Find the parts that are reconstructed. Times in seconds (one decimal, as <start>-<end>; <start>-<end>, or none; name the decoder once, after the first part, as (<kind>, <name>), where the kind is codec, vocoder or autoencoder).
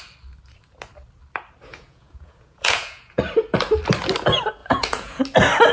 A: 1.7-3.2 (vocoder, Vocos); 4.6-5.2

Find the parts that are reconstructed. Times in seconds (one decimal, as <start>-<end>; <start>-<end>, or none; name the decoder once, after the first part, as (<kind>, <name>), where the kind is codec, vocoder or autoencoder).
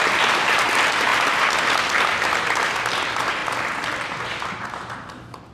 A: none